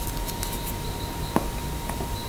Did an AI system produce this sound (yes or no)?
no